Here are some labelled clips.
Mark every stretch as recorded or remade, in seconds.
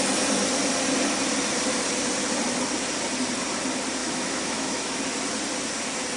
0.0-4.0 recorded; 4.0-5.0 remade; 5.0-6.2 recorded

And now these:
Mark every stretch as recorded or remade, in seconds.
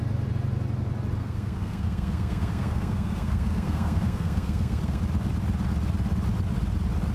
0.0-1.2 recorded; 1.2-5.0 remade; 5.0-7.1 recorded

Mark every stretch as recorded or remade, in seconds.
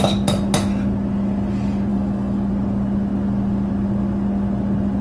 0.0-1.9 recorded; 1.9-2.5 remade; 2.5-5.0 recorded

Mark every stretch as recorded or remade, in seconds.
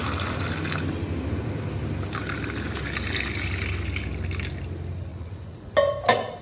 0.0-5.1 recorded; 5.1-5.7 remade; 5.7-6.4 recorded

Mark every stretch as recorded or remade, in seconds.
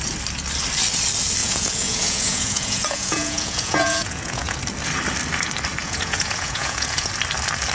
0.0-1.4 recorded; 1.4-4.6 remade; 4.6-5.8 recorded; 5.8-7.1 remade; 7.1-7.7 recorded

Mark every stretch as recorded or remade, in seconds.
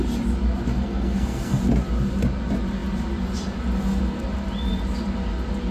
0.0-0.7 recorded; 0.7-1.6 remade; 1.6-5.7 recorded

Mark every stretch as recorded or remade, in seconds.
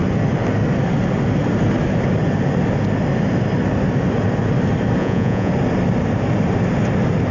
0.0-5.0 recorded; 5.0-5.5 remade; 5.5-7.3 recorded